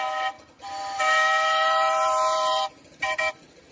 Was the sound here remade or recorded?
recorded